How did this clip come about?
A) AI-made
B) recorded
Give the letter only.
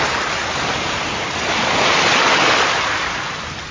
B